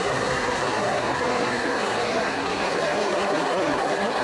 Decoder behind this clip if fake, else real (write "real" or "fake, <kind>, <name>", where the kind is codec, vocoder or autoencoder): fake, codec, SNAC